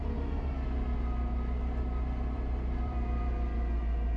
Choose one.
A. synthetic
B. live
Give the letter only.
A